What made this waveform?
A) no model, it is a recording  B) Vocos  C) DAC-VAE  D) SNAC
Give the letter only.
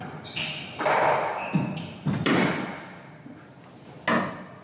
A